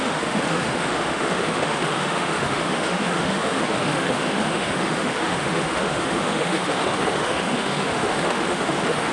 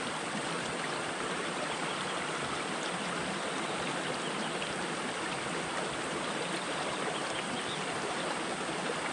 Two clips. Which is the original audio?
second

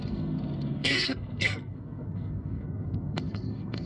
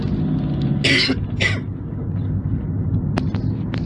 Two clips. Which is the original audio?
second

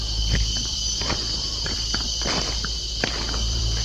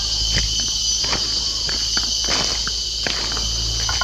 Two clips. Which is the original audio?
second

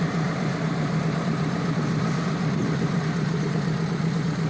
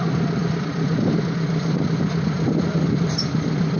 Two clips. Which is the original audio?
second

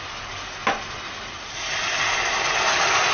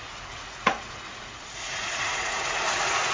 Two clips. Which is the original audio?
first